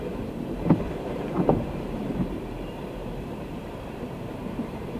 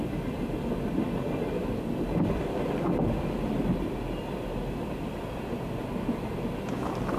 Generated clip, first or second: first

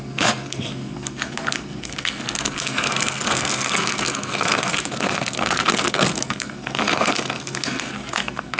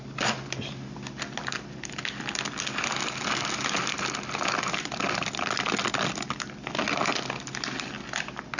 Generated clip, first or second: first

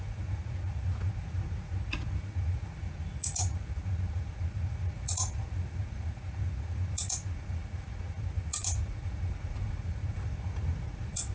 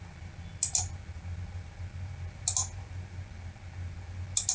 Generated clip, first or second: first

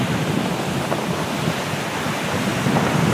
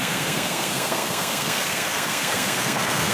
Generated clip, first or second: second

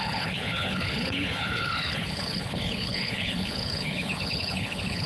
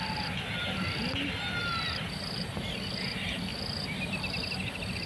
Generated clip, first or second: first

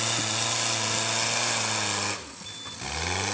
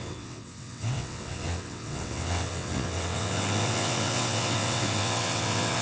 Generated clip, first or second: second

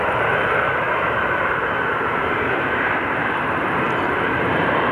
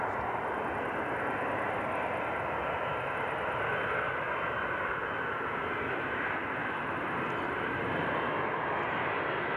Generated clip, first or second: first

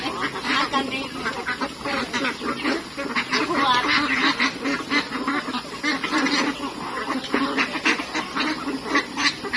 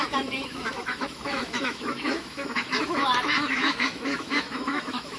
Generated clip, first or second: second